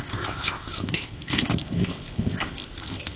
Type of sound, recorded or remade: remade